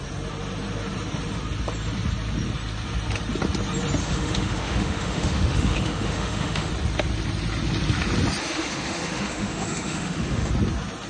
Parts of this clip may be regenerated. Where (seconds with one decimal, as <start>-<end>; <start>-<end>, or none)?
4.0-6.7; 8.4-10.5